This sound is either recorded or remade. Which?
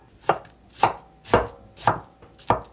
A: recorded